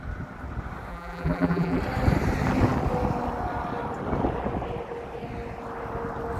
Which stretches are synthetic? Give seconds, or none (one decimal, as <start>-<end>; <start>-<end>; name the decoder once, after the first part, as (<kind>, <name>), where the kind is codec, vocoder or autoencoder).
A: 0.9-1.8 (vocoder, BigVGAN v2)